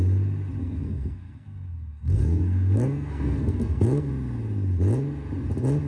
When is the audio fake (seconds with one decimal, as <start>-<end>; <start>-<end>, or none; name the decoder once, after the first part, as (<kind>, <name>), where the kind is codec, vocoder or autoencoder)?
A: 0.6-4.1 (codec, SNAC)